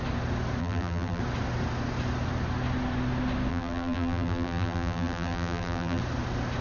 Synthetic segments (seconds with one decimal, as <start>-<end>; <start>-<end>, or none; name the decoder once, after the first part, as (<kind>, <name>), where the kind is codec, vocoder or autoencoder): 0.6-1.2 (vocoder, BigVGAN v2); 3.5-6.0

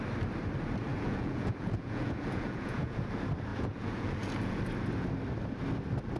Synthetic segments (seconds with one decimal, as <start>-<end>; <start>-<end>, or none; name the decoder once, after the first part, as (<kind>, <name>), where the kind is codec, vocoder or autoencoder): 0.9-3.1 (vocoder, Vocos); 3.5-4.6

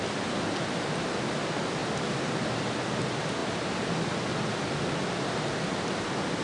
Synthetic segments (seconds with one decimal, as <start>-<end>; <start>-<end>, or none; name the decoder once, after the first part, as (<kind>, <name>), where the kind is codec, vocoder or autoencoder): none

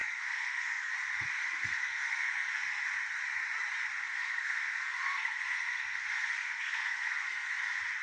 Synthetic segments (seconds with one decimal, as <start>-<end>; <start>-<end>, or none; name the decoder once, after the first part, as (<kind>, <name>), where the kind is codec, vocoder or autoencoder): 0.0-0.9 (codec, SNAC); 1.4-2.8; 3.9-7.5

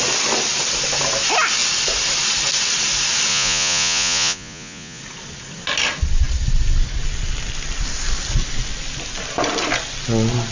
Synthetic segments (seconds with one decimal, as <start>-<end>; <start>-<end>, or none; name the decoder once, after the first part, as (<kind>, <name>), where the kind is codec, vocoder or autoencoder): 3.3-5.0 (vocoder, Vocos)

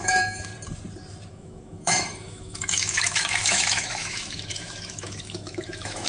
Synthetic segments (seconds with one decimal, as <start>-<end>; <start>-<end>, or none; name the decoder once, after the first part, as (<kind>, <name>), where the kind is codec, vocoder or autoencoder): 0.0-0.5 (autoencoder, DAC-VAE); 1.3-6.1

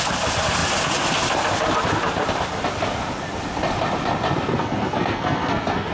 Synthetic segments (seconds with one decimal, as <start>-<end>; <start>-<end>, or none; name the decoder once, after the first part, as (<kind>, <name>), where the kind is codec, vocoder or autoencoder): 4.6-5.9 (codec, SNAC)